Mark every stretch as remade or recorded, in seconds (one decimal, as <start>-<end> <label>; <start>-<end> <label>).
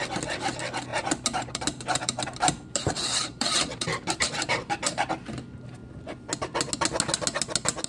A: 0.0-0.9 recorded; 0.9-5.1 remade; 5.1-7.9 recorded